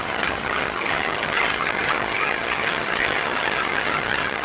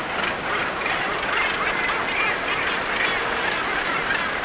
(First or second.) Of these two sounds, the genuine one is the second